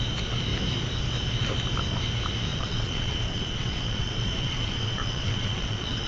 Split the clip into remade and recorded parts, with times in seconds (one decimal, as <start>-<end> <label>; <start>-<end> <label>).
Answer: 0.0-2.5 recorded; 2.5-6.1 remade